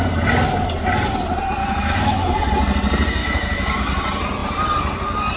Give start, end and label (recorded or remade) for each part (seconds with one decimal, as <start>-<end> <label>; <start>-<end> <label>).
0.0-1.6 recorded; 1.6-2.3 remade; 2.3-3.2 recorded; 3.2-3.8 remade; 3.8-5.4 recorded